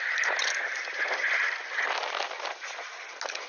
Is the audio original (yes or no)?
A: yes